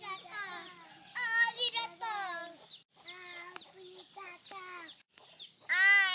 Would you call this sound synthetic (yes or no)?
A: no